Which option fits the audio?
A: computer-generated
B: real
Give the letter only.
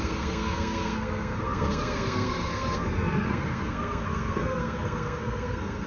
A